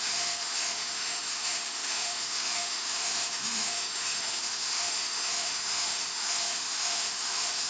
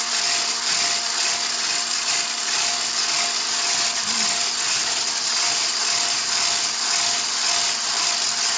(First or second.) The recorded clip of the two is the second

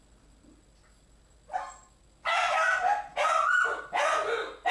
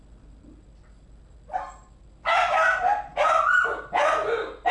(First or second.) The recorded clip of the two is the first